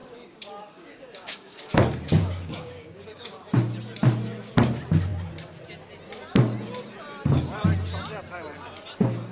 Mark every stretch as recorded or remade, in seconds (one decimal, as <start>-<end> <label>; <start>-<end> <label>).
0.0-1.7 remade; 1.7-2.2 recorded; 2.2-3.4 remade; 3.4-9.3 recorded